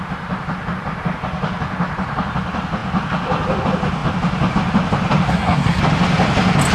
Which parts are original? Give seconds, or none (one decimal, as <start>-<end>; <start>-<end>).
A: 0.0-5.3; 5.8-6.7